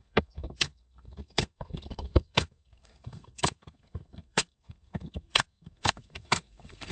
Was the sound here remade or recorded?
remade